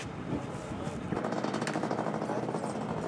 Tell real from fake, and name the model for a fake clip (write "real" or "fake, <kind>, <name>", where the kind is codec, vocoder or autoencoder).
real